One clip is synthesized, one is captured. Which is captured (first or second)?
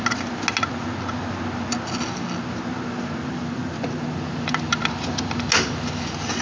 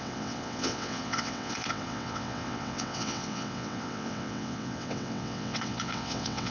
first